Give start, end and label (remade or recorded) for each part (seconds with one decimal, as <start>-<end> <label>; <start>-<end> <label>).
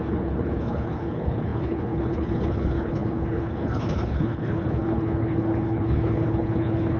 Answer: 0.0-7.0 remade